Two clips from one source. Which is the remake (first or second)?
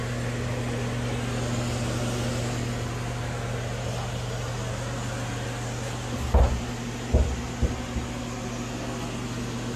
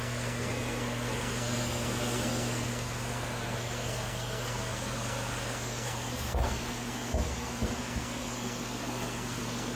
second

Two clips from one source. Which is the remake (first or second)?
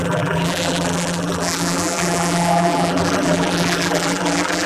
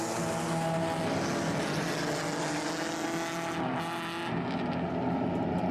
first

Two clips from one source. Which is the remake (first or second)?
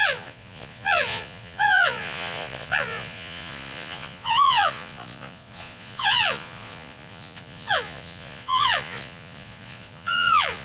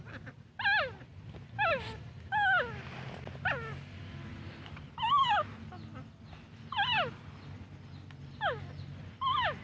first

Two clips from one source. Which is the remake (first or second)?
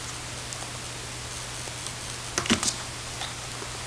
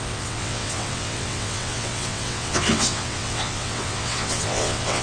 second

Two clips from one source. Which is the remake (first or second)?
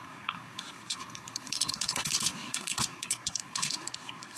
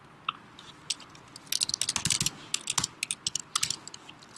first